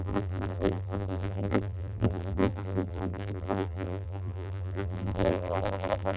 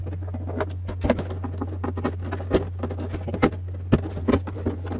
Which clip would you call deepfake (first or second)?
first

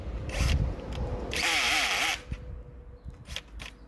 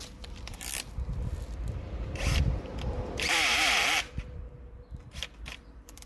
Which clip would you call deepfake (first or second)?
second